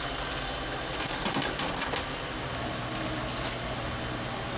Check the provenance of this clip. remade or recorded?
recorded